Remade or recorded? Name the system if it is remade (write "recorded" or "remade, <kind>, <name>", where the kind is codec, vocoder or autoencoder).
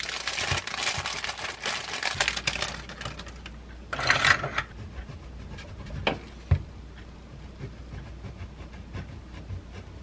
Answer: recorded